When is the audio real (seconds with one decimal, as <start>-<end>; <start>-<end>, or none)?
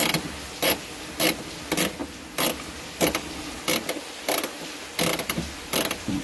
0.0-6.2